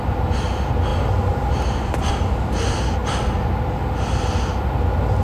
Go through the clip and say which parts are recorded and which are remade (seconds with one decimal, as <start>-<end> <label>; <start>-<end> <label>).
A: 0.0-5.2 recorded